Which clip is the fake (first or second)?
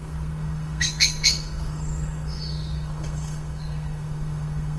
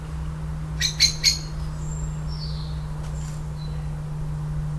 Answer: first